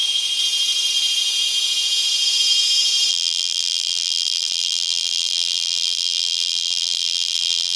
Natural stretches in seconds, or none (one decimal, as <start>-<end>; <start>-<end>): 0.0-3.1